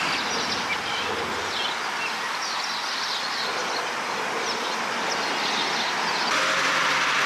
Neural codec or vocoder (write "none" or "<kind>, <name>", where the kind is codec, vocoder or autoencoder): none